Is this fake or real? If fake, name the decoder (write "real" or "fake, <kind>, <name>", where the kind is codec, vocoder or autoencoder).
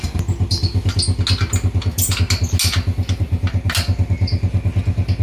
real